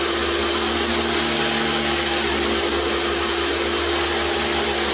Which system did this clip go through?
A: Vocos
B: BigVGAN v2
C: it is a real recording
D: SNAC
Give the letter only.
C